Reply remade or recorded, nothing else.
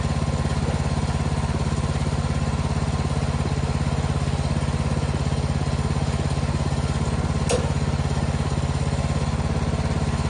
recorded